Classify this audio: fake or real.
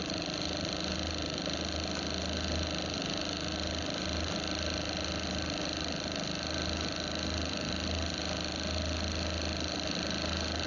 real